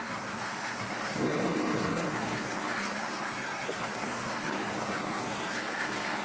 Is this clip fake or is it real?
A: fake